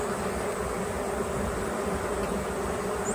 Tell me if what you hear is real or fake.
real